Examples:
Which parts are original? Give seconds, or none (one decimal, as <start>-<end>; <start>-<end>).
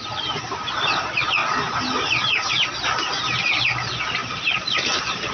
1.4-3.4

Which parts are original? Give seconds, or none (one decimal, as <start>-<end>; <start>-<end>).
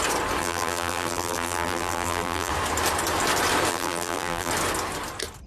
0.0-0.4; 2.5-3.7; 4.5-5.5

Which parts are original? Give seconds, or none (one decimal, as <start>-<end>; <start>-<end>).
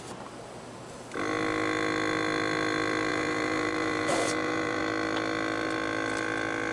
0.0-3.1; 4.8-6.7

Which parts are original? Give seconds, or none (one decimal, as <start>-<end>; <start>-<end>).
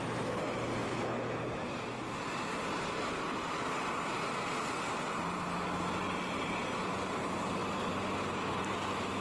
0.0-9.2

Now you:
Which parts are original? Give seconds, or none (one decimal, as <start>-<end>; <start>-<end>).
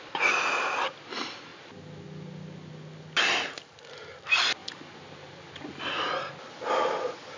0.0-7.4